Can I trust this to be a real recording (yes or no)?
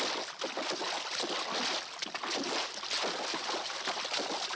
yes